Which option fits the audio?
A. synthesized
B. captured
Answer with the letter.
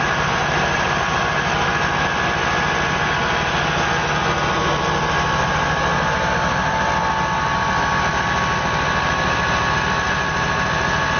B